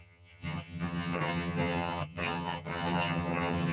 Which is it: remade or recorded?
remade